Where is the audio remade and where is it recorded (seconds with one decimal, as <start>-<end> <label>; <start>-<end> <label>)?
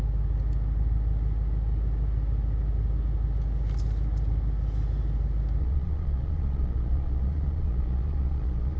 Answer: 0.0-5.6 recorded; 5.6-8.8 remade